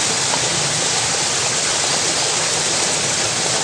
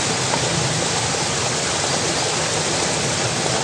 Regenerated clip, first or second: first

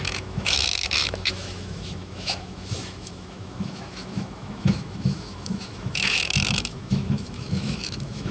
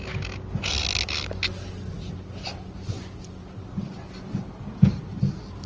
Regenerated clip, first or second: first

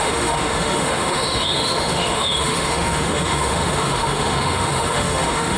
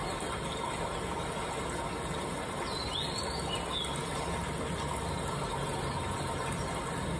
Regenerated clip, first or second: first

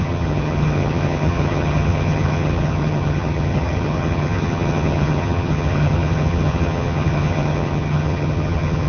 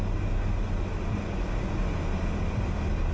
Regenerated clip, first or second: first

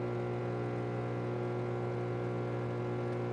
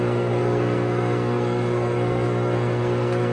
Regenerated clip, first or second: second